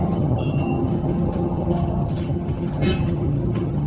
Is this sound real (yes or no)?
no